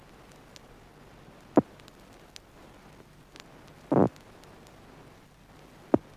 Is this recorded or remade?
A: recorded